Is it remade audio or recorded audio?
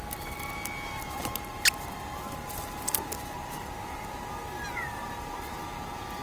recorded